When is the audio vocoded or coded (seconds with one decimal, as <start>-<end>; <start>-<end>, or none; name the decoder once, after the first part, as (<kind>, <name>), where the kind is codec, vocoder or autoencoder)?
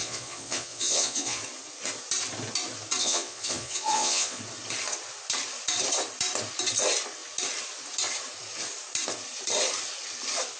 0.0-1.4 (vocoder, Vocos); 3.0-4.4